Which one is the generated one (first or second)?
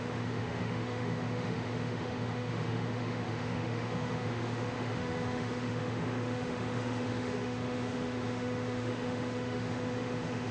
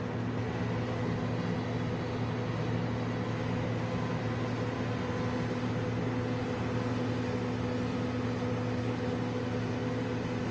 first